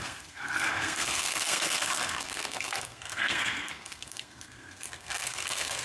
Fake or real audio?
fake